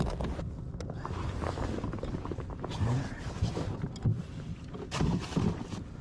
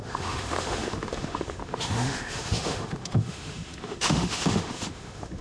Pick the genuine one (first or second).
first